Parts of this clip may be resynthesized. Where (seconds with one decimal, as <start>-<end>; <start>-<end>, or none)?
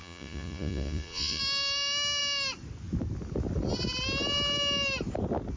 0.0-1.4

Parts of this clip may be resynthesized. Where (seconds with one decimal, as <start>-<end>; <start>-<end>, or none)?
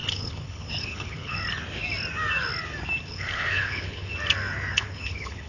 0.0-1.4; 3.1-4.1; 4.7-5.5